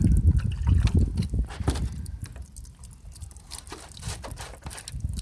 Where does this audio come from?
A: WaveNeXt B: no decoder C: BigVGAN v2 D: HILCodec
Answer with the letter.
B